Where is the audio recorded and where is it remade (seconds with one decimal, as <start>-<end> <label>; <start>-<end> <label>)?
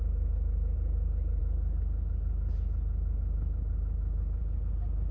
0.0-5.1 recorded